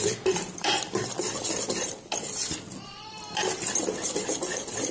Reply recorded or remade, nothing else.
remade